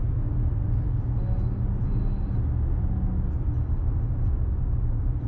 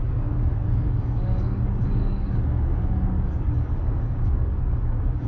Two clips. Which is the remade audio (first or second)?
second